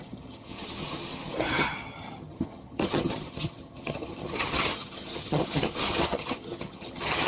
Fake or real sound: fake